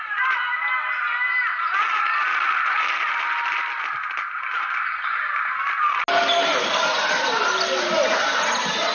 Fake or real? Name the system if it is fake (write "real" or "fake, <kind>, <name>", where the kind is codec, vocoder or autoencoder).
real